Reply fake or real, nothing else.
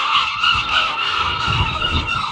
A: fake